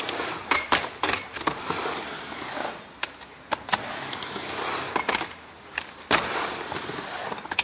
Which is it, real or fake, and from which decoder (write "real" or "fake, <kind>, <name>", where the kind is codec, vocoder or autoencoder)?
real